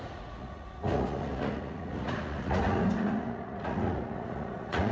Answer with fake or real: fake